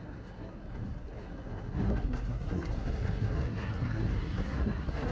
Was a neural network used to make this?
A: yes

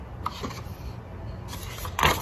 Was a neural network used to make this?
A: no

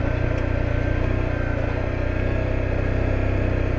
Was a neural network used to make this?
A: no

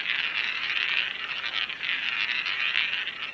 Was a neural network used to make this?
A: no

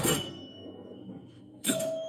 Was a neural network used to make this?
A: yes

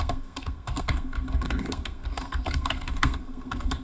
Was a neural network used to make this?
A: yes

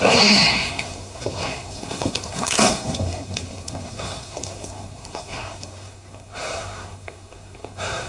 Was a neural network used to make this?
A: yes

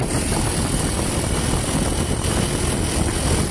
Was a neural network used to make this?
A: no